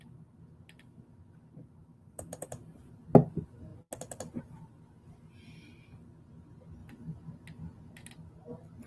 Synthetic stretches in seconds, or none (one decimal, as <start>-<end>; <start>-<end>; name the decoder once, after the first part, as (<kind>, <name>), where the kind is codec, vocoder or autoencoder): 1.8-3.1 (vocoder, BigVGAN v2)